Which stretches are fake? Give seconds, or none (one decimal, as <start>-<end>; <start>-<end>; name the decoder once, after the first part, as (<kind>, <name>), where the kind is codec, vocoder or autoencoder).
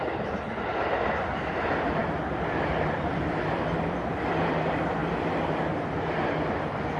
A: none